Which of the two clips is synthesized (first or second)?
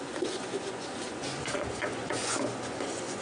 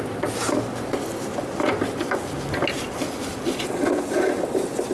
first